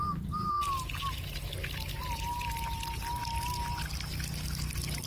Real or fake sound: real